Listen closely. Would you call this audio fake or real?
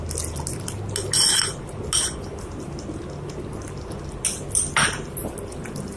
real